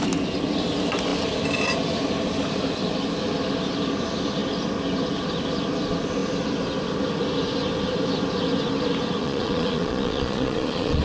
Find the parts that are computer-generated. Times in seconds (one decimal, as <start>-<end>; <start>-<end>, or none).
9.2-11.0